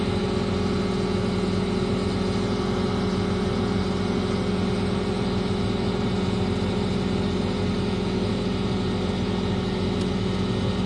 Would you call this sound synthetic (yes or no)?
no